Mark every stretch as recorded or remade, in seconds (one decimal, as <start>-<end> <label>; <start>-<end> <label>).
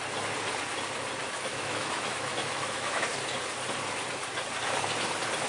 0.0-1.2 recorded; 1.2-3.1 remade; 3.1-5.5 recorded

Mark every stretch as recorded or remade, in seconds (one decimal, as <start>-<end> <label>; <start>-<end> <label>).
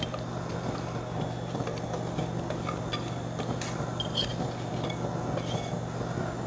0.0-6.5 recorded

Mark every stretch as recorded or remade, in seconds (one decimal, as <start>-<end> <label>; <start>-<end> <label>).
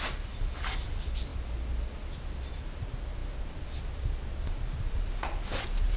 0.0-6.0 recorded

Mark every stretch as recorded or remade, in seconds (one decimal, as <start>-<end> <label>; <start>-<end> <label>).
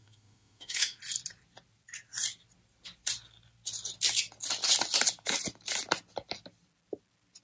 0.0-1.0 remade; 1.0-7.4 recorded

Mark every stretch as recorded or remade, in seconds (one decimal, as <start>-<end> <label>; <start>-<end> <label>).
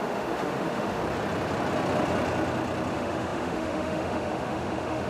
0.0-1.0 remade; 1.0-2.9 recorded; 2.9-5.1 remade